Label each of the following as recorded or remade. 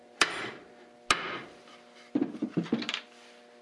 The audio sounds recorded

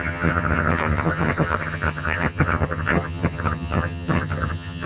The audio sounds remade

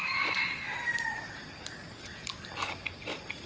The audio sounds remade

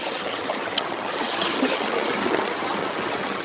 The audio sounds remade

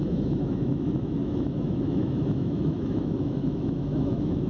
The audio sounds remade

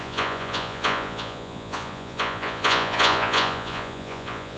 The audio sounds remade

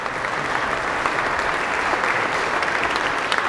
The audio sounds remade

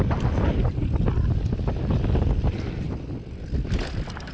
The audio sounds recorded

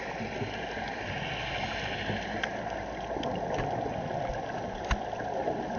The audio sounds recorded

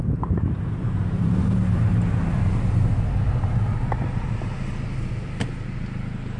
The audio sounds recorded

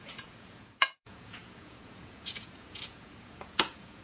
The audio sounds remade